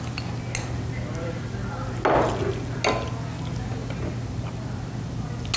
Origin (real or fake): real